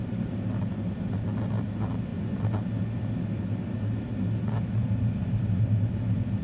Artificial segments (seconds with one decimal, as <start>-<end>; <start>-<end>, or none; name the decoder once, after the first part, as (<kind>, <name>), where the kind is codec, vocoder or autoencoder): none